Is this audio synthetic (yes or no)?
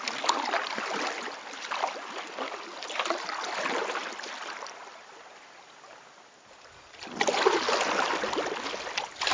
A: no